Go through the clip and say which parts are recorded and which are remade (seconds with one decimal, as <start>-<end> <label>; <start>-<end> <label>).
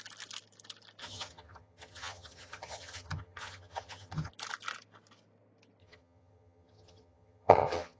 0.0-1.0 recorded; 1.0-4.3 remade; 4.3-5.8 recorded; 5.8-8.0 remade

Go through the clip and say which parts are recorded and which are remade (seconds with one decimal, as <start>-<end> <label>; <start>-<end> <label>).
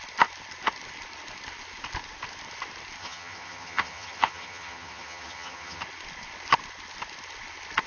0.0-3.0 recorded; 3.0-5.8 remade; 5.8-7.9 recorded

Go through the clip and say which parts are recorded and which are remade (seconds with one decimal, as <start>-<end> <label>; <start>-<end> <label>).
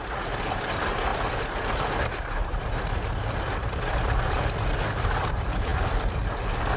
0.0-6.8 recorded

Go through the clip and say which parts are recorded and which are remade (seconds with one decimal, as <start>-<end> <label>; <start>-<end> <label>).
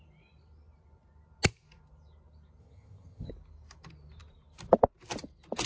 0.0-2.6 recorded; 2.6-3.3 remade; 3.3-5.7 recorded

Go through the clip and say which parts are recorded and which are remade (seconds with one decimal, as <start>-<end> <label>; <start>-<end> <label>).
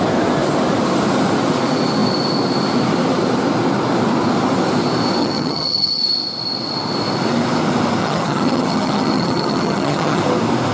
0.0-5.2 recorded; 5.2-6.0 remade; 6.0-8.0 recorded; 8.0-10.2 remade; 10.2-10.7 recorded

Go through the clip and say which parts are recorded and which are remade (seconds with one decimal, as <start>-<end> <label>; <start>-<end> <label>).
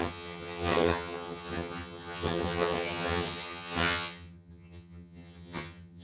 0.0-6.0 remade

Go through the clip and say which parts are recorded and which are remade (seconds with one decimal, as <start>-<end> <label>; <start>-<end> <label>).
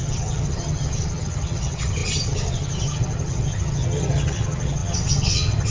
0.0-5.7 remade